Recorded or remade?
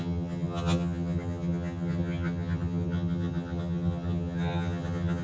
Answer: remade